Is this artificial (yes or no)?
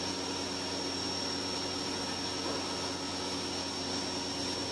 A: no